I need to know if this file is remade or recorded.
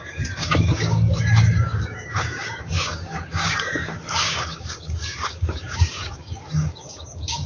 remade